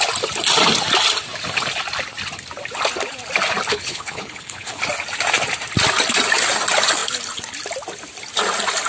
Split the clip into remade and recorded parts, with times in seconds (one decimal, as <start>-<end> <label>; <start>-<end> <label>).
0.0-3.7 recorded; 3.7-4.8 remade; 4.8-8.9 recorded